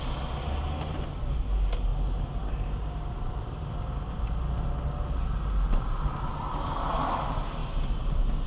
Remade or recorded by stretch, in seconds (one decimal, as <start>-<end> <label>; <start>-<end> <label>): 0.0-1.9 recorded; 1.9-4.3 remade; 4.3-8.5 recorded